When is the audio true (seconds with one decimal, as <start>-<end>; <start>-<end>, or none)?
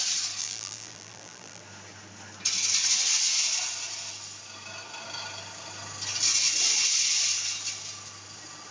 0.0-0.4; 1.6-8.7